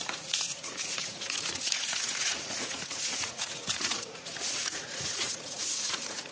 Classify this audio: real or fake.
fake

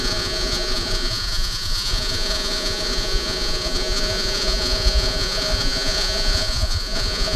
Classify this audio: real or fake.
fake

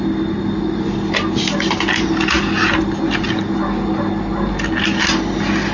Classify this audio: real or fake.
real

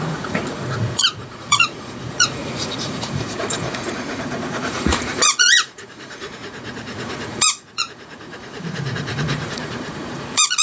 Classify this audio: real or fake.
fake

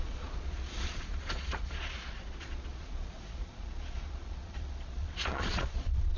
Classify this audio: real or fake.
fake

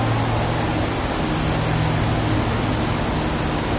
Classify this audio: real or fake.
real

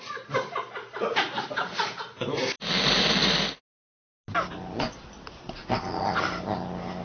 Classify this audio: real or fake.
real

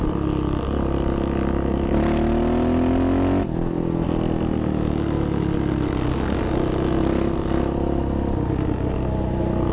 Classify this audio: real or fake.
real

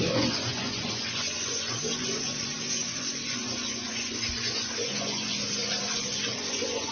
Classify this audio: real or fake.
fake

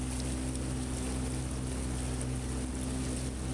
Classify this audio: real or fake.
real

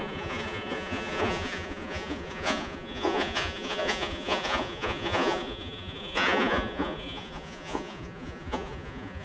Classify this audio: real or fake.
fake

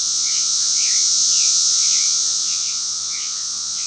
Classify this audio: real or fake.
fake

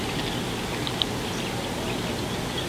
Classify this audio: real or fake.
real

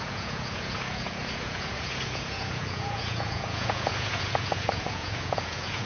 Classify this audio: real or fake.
fake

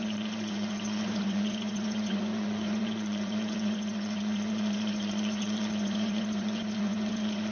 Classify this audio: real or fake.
fake